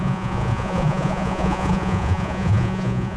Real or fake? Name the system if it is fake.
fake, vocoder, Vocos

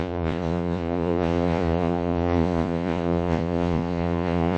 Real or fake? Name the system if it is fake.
fake, vocoder, Vocos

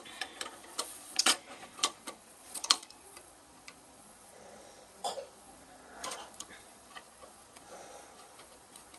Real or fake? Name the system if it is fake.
fake, vocoder, Vocos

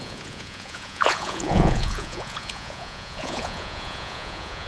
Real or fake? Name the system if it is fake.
fake, vocoder, Vocos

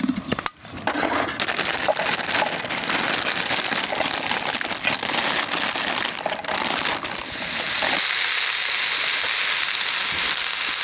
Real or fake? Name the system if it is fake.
real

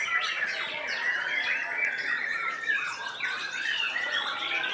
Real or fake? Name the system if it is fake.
fake, vocoder, Vocos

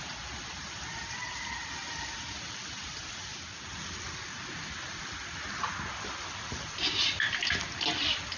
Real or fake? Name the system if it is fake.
real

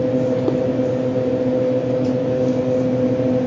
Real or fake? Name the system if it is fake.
real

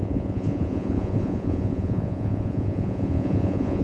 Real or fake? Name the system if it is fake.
fake, vocoder, Vocos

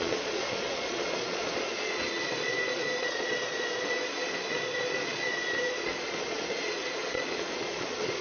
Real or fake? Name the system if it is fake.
fake, vocoder, Vocos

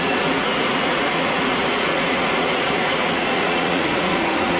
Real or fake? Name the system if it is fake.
fake, vocoder, Vocos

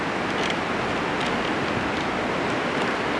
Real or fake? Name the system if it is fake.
real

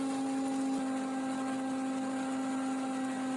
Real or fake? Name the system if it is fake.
real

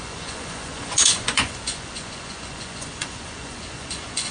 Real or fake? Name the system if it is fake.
fake, vocoder, Vocos